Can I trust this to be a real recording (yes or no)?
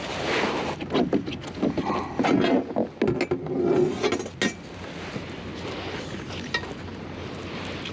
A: yes